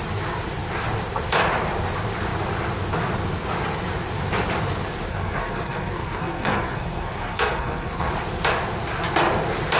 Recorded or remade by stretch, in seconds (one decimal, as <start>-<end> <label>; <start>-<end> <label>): 0.0-5.1 recorded; 5.1-8.1 remade; 8.1-9.8 recorded